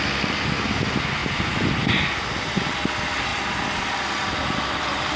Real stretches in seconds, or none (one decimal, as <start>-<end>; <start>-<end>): 0.0-5.2